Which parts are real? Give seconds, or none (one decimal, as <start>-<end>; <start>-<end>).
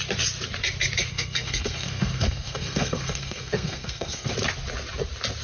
0.0-1.1; 4.3-5.4